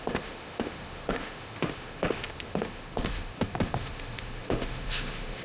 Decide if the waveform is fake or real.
fake